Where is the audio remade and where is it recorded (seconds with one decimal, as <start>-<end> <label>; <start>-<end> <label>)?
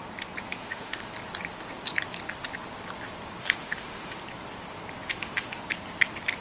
0.0-0.6 recorded; 0.6-1.1 remade; 1.1-3.4 recorded; 3.4-4.2 remade; 4.2-5.1 recorded; 5.1-5.6 remade; 5.6-6.4 recorded